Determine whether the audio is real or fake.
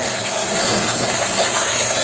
fake